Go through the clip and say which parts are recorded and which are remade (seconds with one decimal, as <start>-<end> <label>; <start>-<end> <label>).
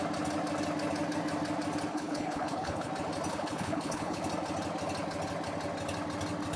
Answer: 0.0-1.9 recorded; 1.9-2.9 remade; 2.9-3.3 recorded; 3.3-4.2 remade; 4.2-6.6 recorded